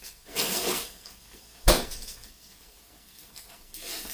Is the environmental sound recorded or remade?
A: remade